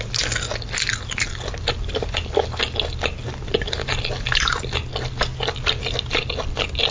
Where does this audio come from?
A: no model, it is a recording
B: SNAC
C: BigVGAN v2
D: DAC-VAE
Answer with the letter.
A